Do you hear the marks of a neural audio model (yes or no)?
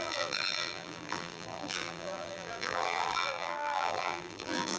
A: yes